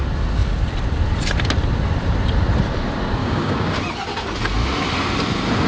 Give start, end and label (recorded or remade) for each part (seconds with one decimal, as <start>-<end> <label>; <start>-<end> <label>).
0.0-3.2 recorded; 3.2-3.8 remade; 3.8-5.7 recorded